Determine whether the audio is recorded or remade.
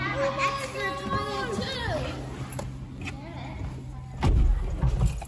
recorded